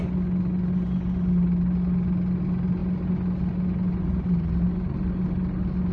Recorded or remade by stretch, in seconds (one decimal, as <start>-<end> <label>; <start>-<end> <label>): 0.0-5.9 recorded